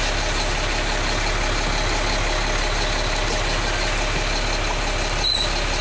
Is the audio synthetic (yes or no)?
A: no